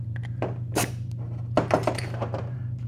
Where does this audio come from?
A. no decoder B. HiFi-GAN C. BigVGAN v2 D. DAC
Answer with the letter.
C